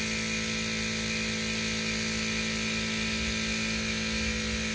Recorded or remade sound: recorded